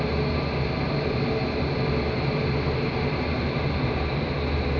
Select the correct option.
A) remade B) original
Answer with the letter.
B